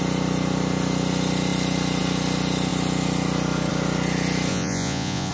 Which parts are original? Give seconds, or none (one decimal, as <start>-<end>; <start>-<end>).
0.0-4.5